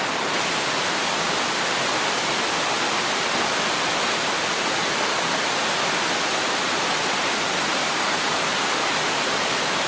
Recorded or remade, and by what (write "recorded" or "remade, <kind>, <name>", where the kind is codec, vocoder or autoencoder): recorded